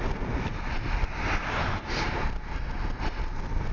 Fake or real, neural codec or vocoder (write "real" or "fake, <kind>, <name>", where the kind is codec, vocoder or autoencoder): real